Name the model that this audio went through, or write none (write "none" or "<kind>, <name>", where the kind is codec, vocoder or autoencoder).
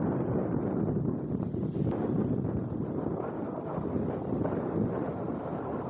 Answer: none